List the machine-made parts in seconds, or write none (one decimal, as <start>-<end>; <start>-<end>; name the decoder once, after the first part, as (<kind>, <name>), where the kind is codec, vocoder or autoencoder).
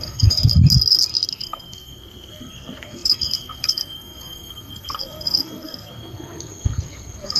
0.0-0.5 (codec, SNAC); 1.3-7.4